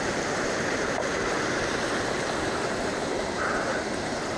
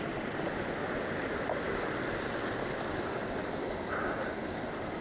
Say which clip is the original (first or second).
second